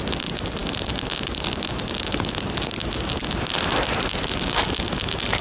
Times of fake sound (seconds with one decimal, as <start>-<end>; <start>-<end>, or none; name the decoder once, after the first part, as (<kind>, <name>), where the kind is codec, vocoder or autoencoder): none